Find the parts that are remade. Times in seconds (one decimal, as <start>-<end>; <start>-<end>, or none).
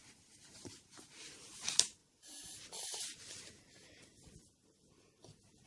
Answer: 0.0-2.0